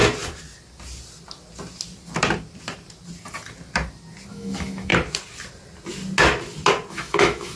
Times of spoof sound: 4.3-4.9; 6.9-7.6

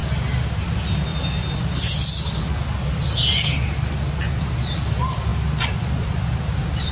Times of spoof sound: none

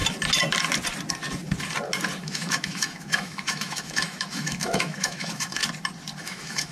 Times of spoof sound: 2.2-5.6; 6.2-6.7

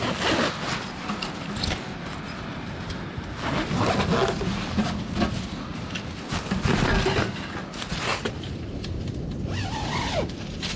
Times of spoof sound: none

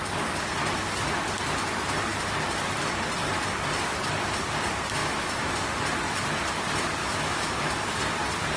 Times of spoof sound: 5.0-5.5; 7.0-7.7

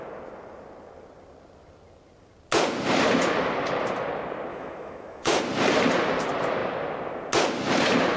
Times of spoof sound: 4.5-5.4